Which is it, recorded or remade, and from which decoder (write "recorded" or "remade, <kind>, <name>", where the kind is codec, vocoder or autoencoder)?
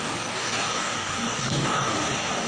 remade, codec, DAC